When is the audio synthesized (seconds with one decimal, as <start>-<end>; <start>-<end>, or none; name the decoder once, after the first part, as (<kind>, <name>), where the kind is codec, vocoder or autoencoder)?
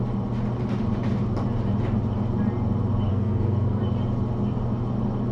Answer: 3.1-3.8 (codec, SNAC)